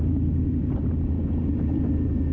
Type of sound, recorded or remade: recorded